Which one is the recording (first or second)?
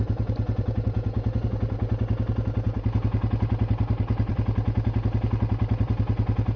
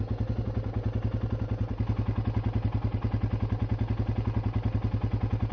second